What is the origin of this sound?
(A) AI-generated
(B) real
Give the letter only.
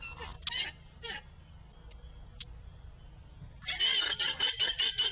B